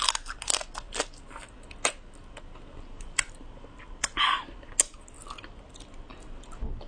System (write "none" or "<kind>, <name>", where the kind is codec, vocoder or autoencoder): none